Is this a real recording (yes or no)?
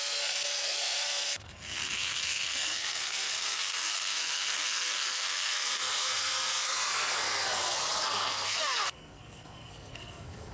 no